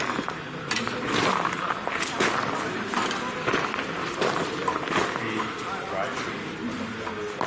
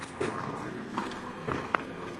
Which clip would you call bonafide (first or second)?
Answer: first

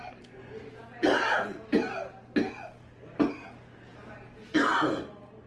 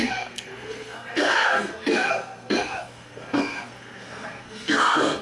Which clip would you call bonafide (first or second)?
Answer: first